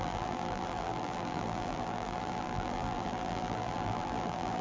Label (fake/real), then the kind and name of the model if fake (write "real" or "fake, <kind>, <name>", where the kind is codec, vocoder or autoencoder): fake, vocoder, BigVGAN v2